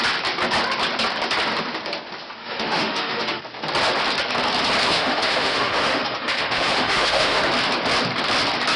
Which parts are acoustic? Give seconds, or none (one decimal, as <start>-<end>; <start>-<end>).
0.0-2.4; 3.4-4.8; 7.4-8.8